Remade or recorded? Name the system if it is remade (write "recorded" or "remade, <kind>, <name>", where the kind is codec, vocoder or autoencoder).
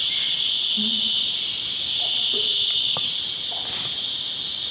recorded